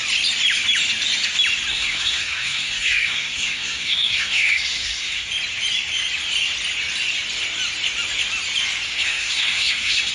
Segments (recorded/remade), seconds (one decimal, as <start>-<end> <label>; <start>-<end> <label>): 0.0-1.7 recorded; 1.7-5.3 remade; 5.3-8.9 recorded; 8.9-10.1 remade